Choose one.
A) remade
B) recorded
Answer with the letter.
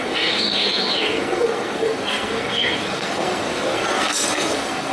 A